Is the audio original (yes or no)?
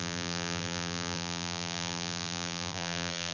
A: no